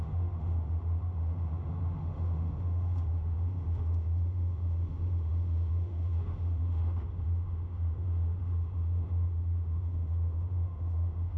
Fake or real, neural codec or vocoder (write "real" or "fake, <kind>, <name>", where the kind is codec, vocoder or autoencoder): fake, autoencoder, DAC-VAE